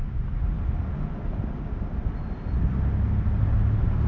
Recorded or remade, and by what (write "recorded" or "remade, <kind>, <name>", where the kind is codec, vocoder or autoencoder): recorded